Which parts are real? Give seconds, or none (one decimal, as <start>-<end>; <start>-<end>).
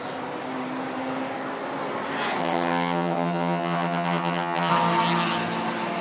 0.0-2.4; 4.7-6.0